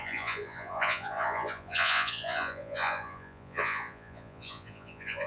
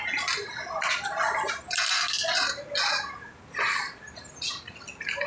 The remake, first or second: first